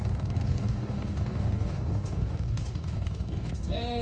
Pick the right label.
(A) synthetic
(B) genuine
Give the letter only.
A